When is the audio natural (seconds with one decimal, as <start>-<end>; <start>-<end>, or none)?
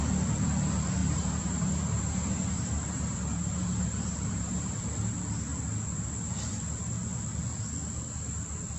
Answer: 0.0-1.0; 4.7-8.8